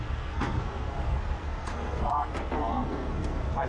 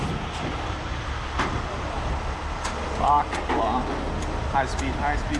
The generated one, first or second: first